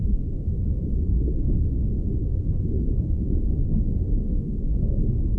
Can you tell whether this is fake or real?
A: fake